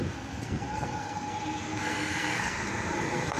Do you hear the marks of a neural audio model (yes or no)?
yes